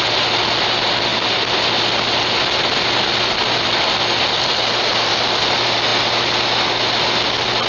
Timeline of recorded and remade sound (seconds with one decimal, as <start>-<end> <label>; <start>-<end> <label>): 0.0-7.7 recorded